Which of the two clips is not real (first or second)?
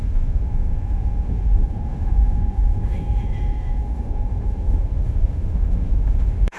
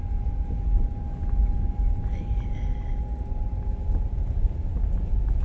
first